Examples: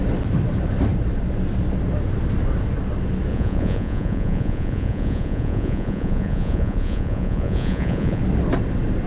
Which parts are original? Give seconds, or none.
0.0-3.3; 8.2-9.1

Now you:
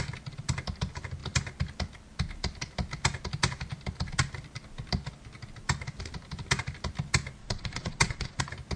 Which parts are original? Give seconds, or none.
0.0-7.4; 8.4-8.8

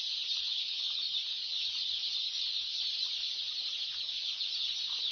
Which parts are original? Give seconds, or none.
0.0-0.5; 3.1-5.1

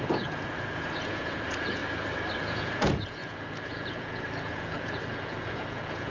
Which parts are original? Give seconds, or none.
1.8-2.4

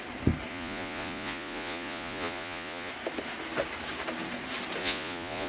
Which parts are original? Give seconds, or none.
0.0-0.5; 2.9-4.8

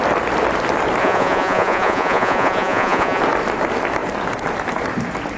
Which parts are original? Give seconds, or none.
0.0-1.0; 3.2-5.4